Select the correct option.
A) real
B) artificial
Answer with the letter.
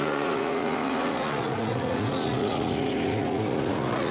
B